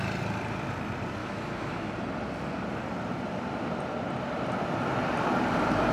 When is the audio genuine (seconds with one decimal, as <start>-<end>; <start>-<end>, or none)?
0.0-1.2; 1.9-5.9